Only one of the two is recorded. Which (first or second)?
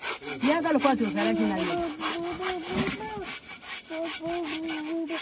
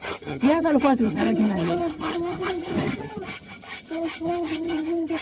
first